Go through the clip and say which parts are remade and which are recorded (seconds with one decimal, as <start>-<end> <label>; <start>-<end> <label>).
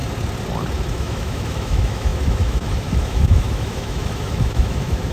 0.0-0.9 recorded; 0.9-5.1 remade